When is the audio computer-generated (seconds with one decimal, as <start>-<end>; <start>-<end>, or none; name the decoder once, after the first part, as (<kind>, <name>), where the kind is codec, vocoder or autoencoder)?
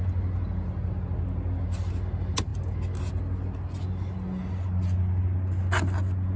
none